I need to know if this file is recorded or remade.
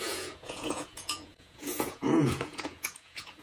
remade